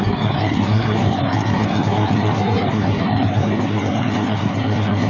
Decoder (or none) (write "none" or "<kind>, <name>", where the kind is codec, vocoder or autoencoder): codec, SNAC